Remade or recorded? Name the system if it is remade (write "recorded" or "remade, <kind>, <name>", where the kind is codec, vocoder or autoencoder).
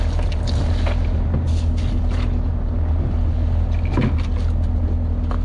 recorded